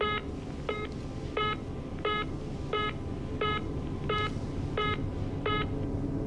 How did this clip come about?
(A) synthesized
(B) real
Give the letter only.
B